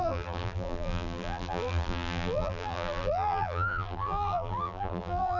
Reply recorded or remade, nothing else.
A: remade